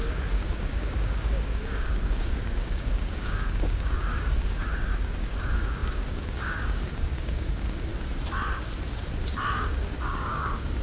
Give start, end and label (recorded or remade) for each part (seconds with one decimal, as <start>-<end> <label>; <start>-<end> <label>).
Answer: 0.0-4.7 remade; 4.7-5.2 recorded; 5.2-7.9 remade; 7.9-9.5 recorded; 9.5-10.8 remade